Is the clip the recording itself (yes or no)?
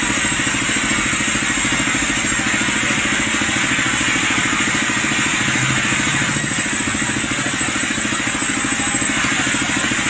yes